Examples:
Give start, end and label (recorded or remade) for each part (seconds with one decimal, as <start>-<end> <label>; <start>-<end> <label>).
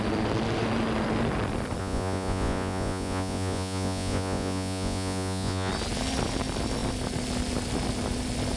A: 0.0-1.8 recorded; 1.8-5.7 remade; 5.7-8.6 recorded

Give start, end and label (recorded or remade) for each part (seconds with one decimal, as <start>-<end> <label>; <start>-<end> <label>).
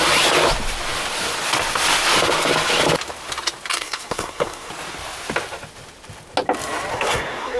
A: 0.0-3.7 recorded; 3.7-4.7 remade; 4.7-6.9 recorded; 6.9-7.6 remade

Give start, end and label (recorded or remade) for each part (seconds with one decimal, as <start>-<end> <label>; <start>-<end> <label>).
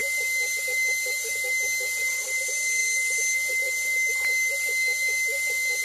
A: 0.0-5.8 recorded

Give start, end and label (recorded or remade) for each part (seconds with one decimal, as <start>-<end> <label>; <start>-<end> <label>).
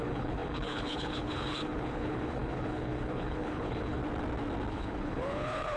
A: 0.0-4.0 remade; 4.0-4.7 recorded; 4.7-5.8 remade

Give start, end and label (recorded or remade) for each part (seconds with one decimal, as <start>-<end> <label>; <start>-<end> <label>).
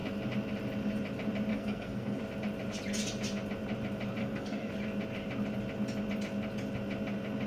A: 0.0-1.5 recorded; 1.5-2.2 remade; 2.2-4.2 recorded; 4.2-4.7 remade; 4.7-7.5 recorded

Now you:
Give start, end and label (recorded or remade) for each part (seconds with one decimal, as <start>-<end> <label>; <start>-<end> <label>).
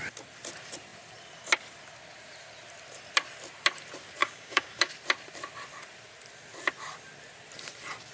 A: 0.0-4.2 recorded; 4.2-4.9 remade; 4.9-8.1 recorded